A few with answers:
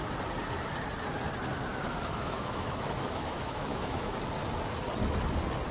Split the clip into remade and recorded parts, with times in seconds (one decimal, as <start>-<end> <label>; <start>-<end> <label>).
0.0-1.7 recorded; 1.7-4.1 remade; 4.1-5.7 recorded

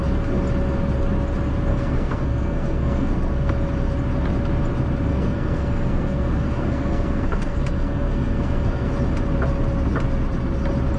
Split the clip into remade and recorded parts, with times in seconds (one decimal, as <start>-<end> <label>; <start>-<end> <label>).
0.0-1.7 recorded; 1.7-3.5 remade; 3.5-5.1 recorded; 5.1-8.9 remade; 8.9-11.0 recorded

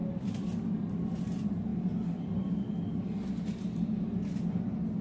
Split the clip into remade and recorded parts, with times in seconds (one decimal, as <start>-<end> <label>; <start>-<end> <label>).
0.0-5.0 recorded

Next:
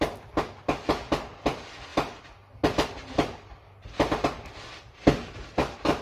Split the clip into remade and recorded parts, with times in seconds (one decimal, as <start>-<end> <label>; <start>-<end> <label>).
0.0-6.0 recorded